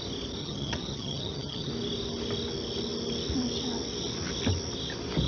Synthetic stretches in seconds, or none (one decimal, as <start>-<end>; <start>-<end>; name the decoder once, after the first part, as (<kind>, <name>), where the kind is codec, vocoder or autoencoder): 0.4-1.7 (vocoder, HiFi-GAN)